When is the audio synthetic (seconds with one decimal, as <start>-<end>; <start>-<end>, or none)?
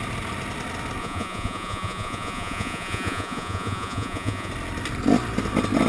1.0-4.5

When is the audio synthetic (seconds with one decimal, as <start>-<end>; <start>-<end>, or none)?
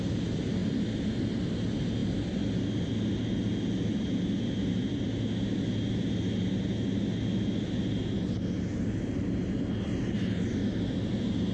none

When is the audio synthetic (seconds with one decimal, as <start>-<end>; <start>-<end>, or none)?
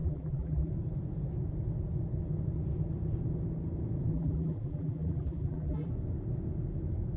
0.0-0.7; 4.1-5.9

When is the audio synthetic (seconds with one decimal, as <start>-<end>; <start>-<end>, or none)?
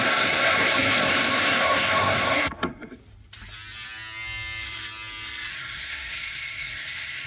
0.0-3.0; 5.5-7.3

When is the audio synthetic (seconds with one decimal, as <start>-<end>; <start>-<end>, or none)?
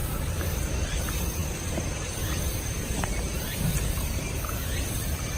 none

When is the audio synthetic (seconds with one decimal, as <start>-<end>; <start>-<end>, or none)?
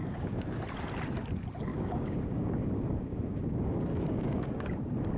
0.0-0.6; 1.7-4.8